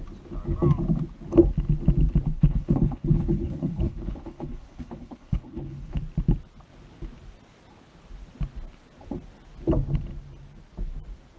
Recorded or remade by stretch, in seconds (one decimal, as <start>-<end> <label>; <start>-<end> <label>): 0.0-2.3 recorded; 2.3-6.0 remade; 6.0-11.4 recorded